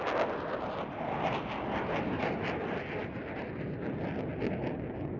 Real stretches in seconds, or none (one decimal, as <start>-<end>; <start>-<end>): 0.0-5.2